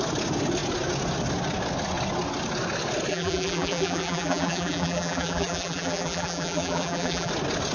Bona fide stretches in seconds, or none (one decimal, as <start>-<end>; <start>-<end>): 0.0-3.1; 7.3-7.7